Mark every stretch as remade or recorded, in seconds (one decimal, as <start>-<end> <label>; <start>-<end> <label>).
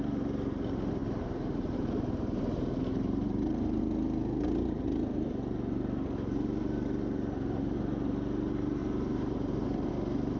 0.0-1.0 recorded; 1.0-3.8 remade; 3.8-8.8 recorded; 8.8-9.9 remade; 9.9-10.4 recorded